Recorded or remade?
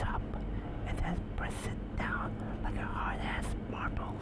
recorded